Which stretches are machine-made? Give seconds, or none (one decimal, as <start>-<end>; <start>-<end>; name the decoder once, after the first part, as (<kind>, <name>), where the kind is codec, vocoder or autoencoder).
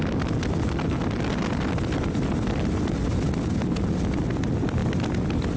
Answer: 0.6-3.0 (vocoder, BigVGAN v2); 4.1-4.8